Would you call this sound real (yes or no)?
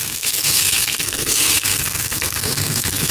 no